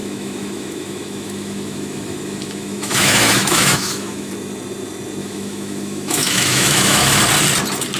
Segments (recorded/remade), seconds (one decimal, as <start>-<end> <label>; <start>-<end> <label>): 0.0-4.3 remade; 4.3-5.2 recorded; 5.2-7.2 remade; 7.2-8.0 recorded